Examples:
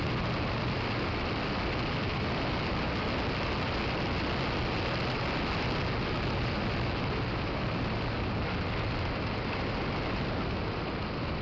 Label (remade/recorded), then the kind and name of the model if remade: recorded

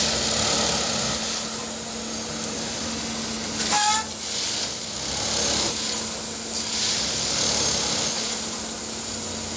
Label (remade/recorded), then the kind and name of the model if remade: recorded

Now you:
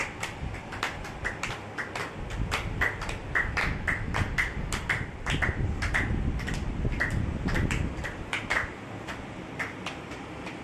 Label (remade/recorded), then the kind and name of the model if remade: recorded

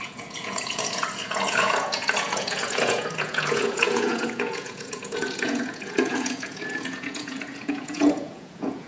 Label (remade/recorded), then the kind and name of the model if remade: remade, vocoder, Vocos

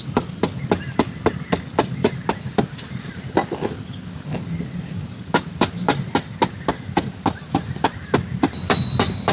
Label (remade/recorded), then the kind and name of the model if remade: recorded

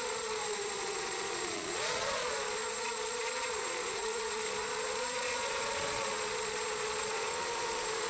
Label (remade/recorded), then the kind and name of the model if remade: remade, vocoder, Vocos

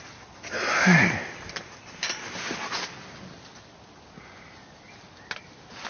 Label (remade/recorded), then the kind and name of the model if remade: recorded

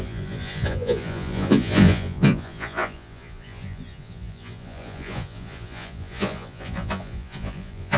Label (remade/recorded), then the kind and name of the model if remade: remade, vocoder, Vocos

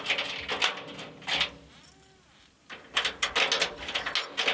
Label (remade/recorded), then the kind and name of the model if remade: recorded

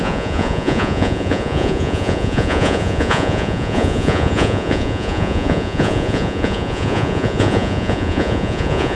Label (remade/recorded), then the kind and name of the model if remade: remade, vocoder, Vocos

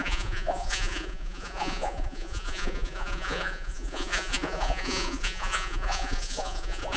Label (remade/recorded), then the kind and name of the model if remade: remade, vocoder, Vocos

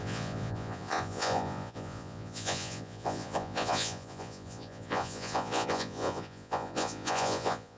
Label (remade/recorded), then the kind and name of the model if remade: remade, vocoder, Vocos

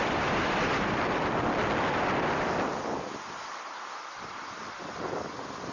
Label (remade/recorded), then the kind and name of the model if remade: recorded